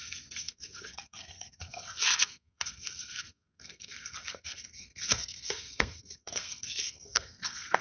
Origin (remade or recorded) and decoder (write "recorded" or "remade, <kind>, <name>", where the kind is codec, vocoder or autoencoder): remade, codec, SNAC